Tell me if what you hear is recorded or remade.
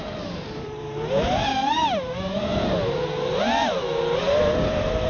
remade